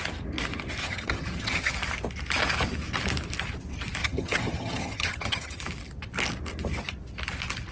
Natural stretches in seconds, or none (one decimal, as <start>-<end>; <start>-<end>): 0.0-0.8; 1.7-4.0; 5.6-7.7